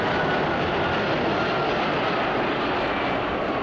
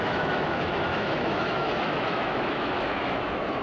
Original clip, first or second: first